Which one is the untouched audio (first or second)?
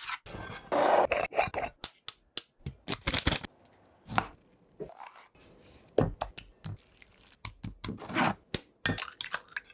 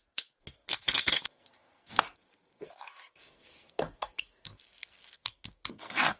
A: first